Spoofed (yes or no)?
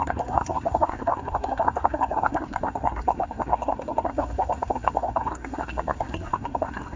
yes